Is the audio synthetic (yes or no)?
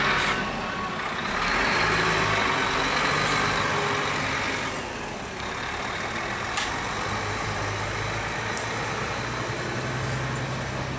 no